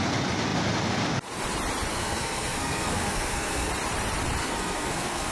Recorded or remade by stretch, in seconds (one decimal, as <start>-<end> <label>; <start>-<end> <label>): 0.0-1.9 recorded; 1.9-3.7 remade; 3.7-4.4 recorded; 4.4-5.3 remade